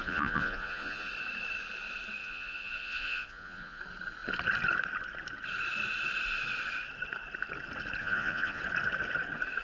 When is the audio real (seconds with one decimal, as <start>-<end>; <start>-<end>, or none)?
1.1-2.2; 3.8-8.0; 8.6-9.6